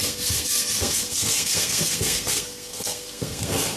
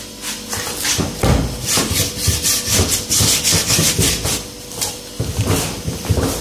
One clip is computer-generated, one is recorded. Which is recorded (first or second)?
second